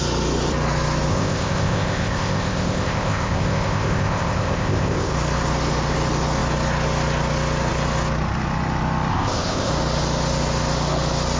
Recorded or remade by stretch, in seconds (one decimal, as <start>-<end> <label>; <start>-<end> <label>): 0.0-1.1 recorded; 1.1-5.1 remade; 5.1-9.1 recorded; 9.1-9.7 remade; 9.7-11.4 recorded